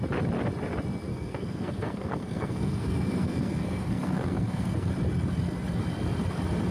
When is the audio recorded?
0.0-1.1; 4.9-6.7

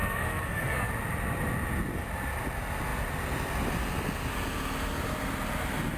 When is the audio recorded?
0.9-6.0

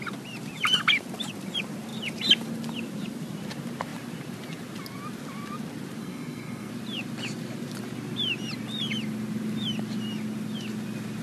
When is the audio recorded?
0.0-6.0; 6.7-11.2